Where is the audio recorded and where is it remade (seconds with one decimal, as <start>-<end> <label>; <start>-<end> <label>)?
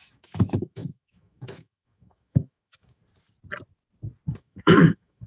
0.0-3.0 remade; 3.0-4.3 recorded; 4.3-5.3 remade